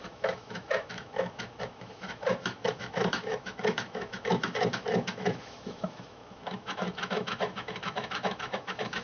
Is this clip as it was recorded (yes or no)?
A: no